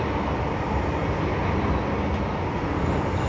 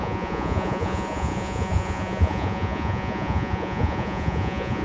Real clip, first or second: first